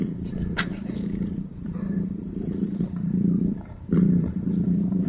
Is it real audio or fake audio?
fake